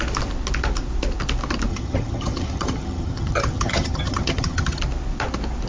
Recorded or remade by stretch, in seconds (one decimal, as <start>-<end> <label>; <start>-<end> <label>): 0.0-1.7 recorded; 1.7-4.8 remade; 4.8-5.7 recorded